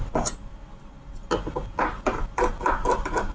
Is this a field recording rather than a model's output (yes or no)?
yes